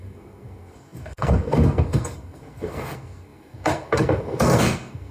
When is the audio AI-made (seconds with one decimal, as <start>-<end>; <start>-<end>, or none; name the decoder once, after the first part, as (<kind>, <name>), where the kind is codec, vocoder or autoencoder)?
0.0-5.1 (codec, SNAC)